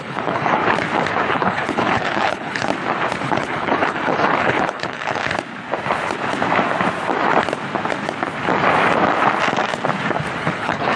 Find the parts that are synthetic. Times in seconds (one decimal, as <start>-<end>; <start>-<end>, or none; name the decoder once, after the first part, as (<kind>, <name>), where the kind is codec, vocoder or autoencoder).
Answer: 0.0-0.6 (codec, HILCodec); 1.3-2.7; 3.2-5.2; 10.4-11.0